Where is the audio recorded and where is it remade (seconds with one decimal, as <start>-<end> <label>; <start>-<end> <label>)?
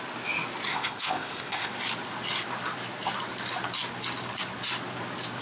0.0-0.7 recorded; 0.7-1.7 remade; 1.7-5.4 recorded